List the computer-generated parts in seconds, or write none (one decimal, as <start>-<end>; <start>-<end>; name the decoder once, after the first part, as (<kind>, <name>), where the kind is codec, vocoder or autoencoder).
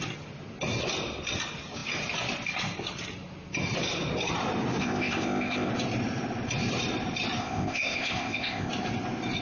4.8-5.7 (codec, ZipCodec); 7.4-8.7